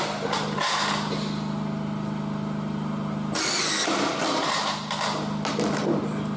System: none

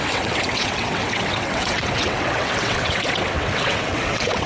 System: vocoder, WaveNeXt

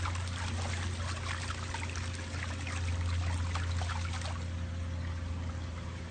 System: none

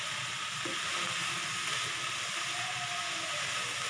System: none